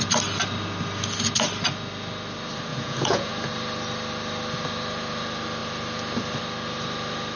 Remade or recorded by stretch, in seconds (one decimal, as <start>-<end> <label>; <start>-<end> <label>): 0.0-2.7 recorded; 2.7-3.3 remade; 3.3-7.4 recorded